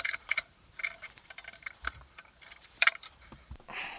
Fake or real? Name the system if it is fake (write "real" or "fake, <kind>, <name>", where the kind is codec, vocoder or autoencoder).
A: fake, vocoder, BigVGAN v2